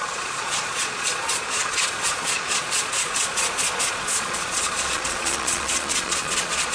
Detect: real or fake fake